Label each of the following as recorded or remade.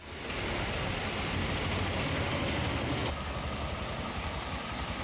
recorded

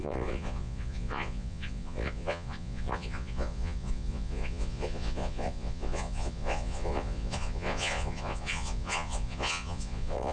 remade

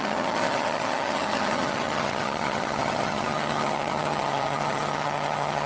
remade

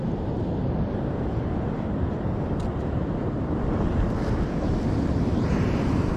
recorded